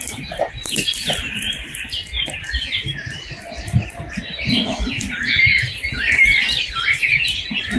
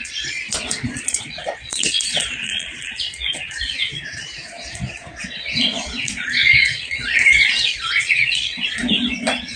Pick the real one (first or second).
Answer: first